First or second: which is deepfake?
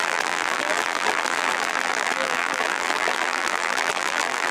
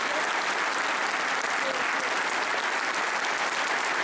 first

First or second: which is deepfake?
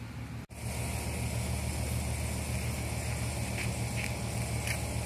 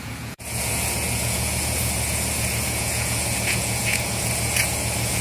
second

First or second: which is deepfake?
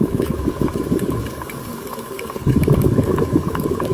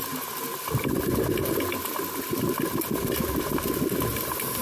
first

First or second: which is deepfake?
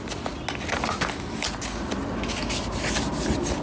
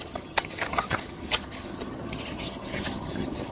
second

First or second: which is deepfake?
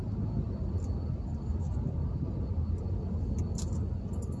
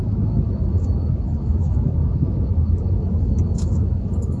second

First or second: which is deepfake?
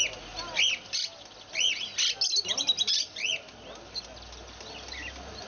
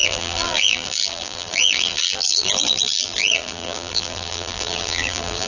second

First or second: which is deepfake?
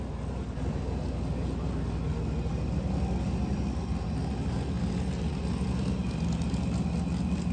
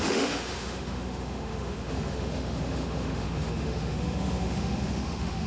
second